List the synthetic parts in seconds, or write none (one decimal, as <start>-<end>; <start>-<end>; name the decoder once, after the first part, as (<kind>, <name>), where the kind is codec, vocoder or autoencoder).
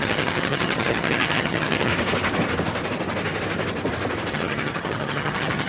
0.0-1.9 (vocoder, HiFi-GAN); 4.3-5.7